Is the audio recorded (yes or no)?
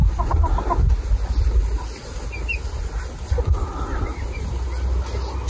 yes